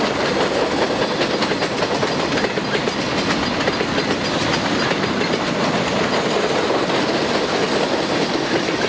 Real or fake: real